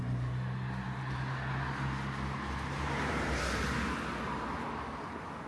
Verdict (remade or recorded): recorded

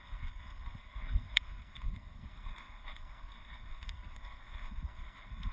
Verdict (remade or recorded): remade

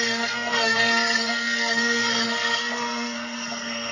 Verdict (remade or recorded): remade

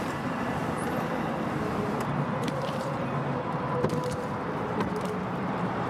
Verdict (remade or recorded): remade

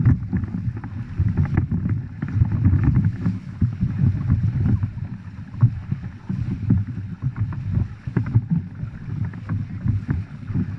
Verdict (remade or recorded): recorded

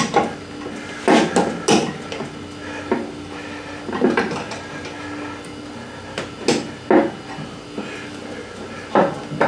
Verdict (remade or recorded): recorded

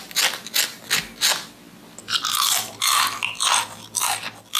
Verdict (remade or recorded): recorded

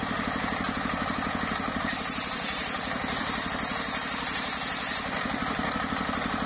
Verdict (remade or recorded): recorded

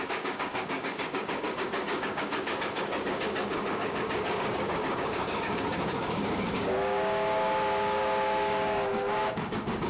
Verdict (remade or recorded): remade